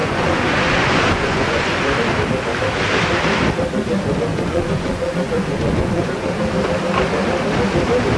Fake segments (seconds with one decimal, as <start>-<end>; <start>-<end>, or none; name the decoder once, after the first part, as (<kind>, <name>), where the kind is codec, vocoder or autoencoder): 0.0-1.8 (vocoder, Vocos); 4.3-6.4